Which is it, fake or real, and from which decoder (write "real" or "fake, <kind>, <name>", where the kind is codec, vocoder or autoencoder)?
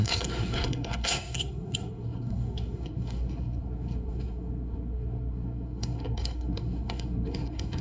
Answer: fake, codec, SNAC